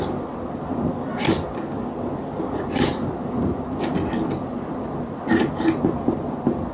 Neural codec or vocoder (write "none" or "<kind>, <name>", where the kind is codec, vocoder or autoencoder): vocoder, BigVGAN v2